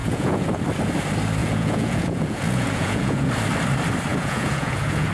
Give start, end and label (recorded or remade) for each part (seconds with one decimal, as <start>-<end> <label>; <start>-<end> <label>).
0.0-0.5 remade; 0.5-1.4 recorded; 1.4-3.3 remade; 3.3-4.1 recorded; 4.1-5.1 remade